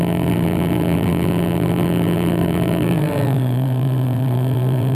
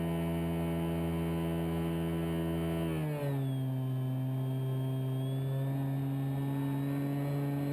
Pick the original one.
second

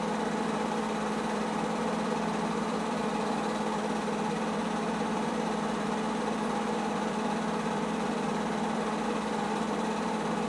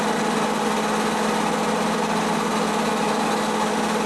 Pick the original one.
second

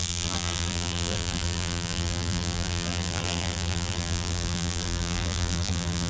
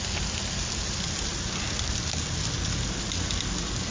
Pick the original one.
second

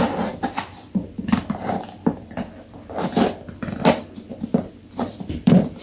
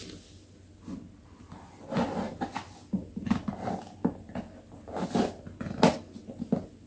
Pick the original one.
second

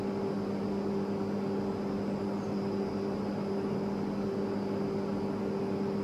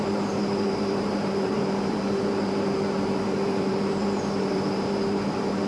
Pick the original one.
first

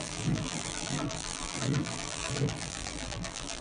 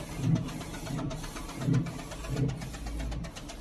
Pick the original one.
second